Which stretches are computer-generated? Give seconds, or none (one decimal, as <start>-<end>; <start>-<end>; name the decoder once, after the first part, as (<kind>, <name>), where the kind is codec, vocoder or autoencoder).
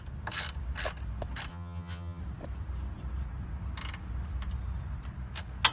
1.5-2.2 (vocoder, HiFi-GAN)